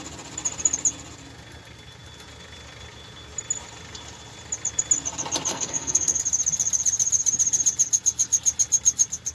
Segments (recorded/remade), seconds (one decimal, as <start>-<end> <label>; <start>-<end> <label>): 0.0-5.5 recorded; 5.5-6.2 remade; 6.2-9.3 recorded